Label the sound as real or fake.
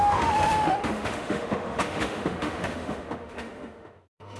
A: fake